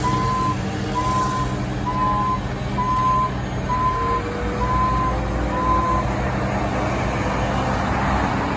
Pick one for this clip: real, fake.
real